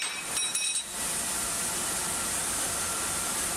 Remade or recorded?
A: recorded